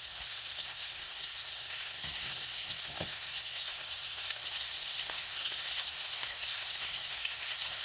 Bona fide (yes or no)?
no